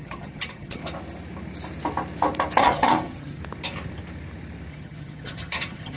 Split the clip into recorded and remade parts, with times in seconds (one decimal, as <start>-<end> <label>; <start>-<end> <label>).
0.0-0.8 remade; 0.8-2.6 recorded; 2.6-3.4 remade; 3.4-4.7 recorded; 4.7-6.0 remade

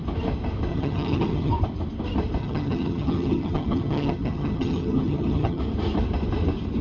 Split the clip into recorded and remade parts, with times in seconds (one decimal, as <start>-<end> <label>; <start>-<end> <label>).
0.0-0.7 recorded; 0.7-1.5 remade; 1.5-2.4 recorded; 2.4-5.6 remade; 5.6-6.8 recorded

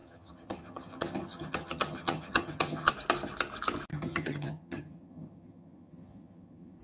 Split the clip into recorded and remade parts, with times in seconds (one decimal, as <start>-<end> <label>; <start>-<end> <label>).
0.0-2.9 remade; 2.9-3.9 recorded; 3.9-6.8 remade

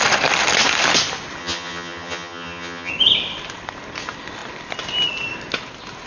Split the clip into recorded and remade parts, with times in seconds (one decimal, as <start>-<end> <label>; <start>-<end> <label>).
0.0-1.4 recorded; 1.4-2.9 remade; 2.9-6.1 recorded

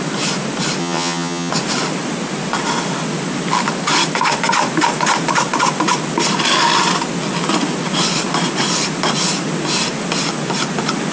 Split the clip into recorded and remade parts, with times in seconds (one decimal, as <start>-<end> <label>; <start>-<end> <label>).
0.0-0.8 recorded; 0.8-1.5 remade; 1.5-11.1 recorded

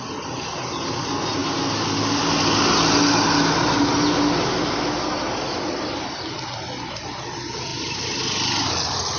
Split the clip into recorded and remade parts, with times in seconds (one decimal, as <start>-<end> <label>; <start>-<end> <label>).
0.0-9.2 recorded

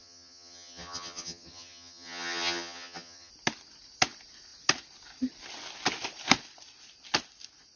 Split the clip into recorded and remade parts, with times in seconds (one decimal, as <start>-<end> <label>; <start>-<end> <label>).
0.0-3.3 remade; 3.3-7.8 recorded